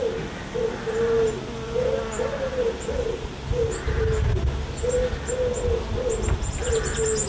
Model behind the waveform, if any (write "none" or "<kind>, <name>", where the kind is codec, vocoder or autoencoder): none